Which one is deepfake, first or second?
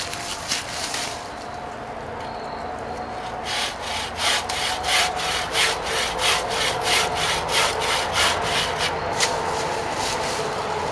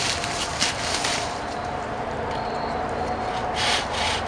second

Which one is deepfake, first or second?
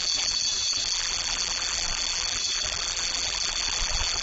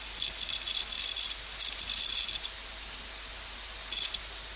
first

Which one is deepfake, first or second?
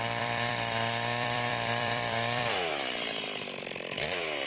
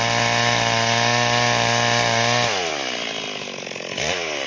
first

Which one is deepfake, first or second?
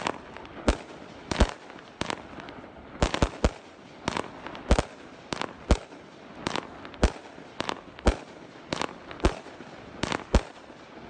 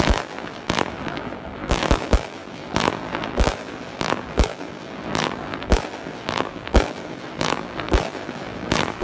second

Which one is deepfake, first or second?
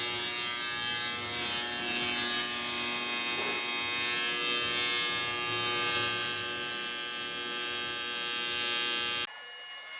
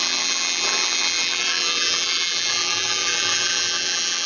second